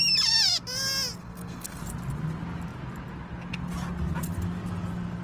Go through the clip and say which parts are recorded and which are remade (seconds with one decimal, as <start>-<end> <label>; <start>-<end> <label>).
0.0-1.2 recorded; 1.2-1.8 remade; 1.8-5.2 recorded